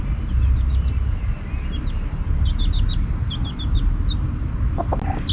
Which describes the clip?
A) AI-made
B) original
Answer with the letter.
B